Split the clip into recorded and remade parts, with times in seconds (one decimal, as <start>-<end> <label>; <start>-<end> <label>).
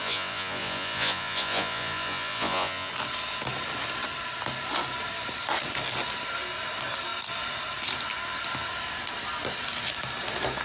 0.0-2.9 remade; 2.9-10.6 recorded